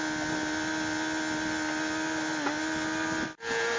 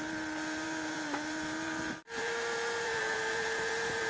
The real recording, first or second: first